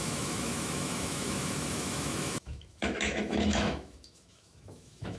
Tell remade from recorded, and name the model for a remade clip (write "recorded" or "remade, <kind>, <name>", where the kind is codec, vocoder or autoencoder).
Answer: remade, autoencoder, DAC-VAE